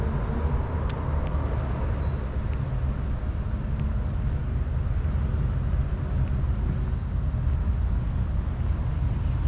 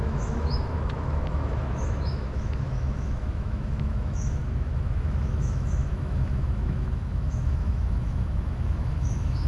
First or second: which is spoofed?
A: second